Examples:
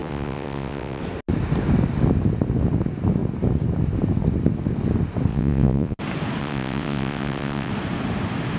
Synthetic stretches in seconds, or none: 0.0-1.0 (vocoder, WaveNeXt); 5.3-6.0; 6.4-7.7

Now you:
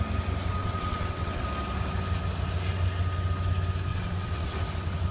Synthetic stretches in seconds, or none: 0.6-1.4 (vocoder, WaveNeXt); 3.9-4.6

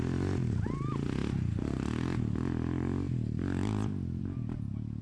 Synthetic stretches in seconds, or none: none

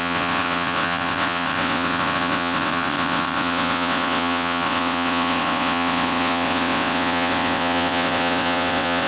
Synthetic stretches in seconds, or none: 0.0-9.1 (vocoder, WaveNeXt)

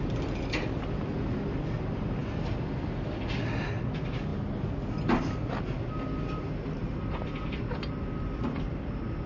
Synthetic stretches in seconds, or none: none

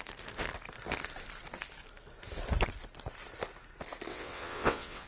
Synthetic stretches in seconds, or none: 4.1-5.1 (vocoder, WaveNeXt)